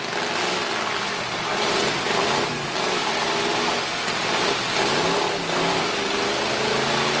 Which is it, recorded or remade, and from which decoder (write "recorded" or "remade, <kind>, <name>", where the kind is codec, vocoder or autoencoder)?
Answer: recorded